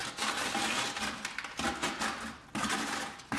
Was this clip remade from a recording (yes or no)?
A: no